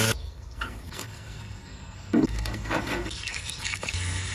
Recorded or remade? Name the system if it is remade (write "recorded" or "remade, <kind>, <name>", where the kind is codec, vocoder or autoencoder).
remade, codec, SNAC